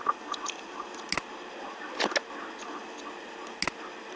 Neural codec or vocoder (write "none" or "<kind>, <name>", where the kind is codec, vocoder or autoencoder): none